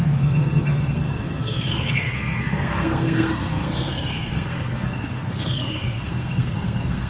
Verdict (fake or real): fake